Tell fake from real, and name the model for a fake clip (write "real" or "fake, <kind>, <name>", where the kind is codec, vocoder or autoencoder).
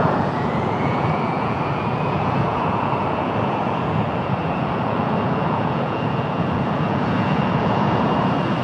fake, vocoder, Vocos